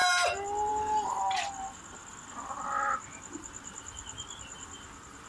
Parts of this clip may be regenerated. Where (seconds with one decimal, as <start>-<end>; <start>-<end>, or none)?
none